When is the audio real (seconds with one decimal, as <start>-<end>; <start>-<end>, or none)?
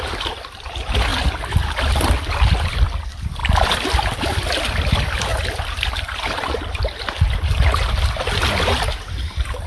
1.1-2.3; 3.4-4.2; 5.3-8.9